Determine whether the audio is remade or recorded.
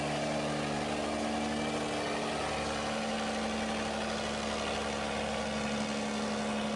recorded